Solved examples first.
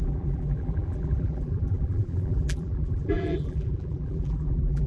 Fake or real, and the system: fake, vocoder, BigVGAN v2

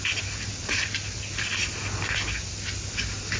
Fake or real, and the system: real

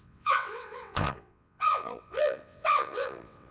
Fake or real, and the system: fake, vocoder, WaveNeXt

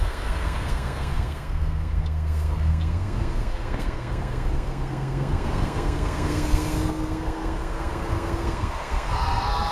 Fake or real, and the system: fake, codec, SNAC